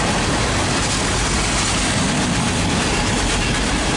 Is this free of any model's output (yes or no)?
yes